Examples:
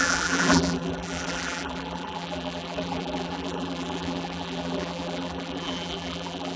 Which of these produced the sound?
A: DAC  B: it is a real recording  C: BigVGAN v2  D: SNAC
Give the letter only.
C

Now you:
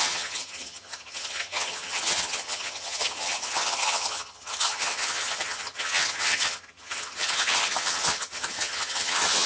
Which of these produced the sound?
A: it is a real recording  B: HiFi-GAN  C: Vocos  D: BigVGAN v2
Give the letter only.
B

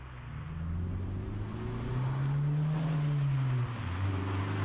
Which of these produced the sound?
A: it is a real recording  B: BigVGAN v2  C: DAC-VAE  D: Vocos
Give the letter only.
A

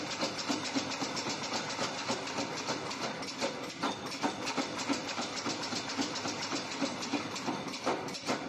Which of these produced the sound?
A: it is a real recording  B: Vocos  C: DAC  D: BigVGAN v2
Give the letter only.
D